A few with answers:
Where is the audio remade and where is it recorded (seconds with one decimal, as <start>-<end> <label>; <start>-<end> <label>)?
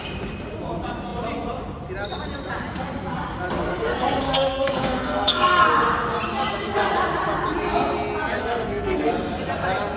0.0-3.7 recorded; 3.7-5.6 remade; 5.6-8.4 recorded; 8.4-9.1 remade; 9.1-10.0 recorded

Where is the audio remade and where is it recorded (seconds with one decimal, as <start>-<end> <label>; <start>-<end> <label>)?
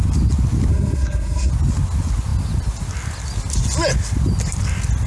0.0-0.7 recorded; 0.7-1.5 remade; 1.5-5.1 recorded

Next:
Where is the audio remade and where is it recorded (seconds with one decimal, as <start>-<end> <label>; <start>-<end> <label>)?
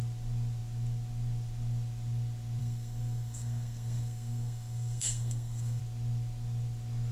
0.0-2.6 recorded; 2.6-5.8 remade; 5.8-7.1 recorded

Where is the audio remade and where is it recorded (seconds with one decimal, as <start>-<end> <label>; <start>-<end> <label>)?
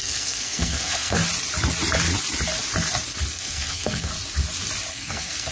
0.0-1.2 remade; 1.2-3.3 recorded; 3.3-4.1 remade; 4.1-4.9 recorded; 4.9-5.5 remade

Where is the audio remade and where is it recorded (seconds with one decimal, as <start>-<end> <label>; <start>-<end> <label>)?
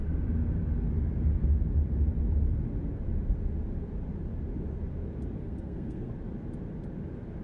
0.0-5.4 recorded; 5.4-6.1 remade; 6.1-7.4 recorded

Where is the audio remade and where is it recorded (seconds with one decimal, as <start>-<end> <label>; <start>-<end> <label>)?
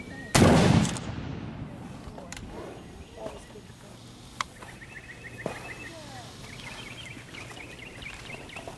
0.0-8.8 recorded